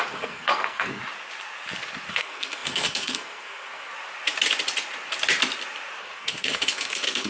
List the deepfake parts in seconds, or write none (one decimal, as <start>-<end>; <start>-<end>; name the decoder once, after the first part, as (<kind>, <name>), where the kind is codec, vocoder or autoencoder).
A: 0.0-1.0 (codec, SNAC); 2.1-3.9; 6.0-7.3